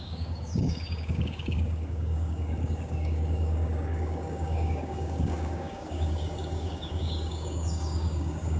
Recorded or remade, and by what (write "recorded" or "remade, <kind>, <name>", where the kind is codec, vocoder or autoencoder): remade, codec, DAC